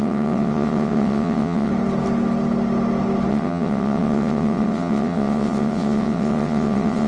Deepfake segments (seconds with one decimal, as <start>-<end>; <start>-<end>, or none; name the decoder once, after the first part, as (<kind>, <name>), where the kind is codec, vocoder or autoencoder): 0.0-1.7 (vocoder, WaveNeXt); 3.3-7.1